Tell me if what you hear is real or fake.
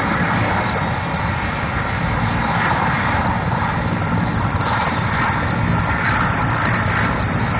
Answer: real